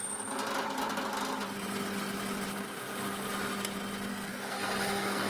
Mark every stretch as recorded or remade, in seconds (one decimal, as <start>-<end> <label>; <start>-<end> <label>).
0.0-4.1 recorded; 4.1-5.3 remade